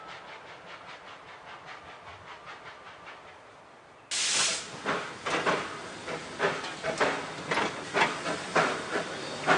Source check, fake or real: real